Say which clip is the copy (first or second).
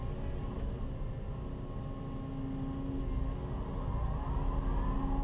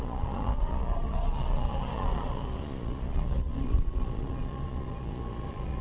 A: second